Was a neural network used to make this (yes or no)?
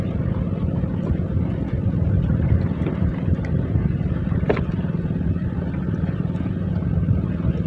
no